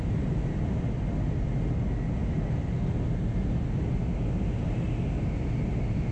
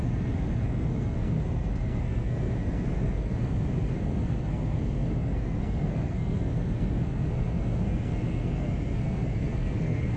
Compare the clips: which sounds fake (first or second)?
second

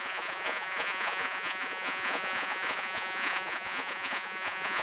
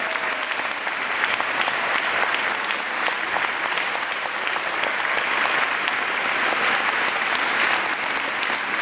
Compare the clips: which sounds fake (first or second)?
first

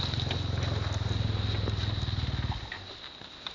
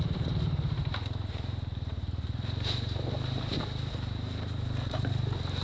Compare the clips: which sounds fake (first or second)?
second